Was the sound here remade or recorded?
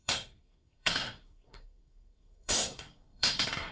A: remade